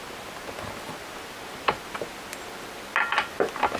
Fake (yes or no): no